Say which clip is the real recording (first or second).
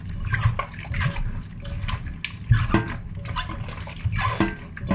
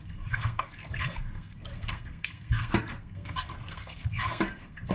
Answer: first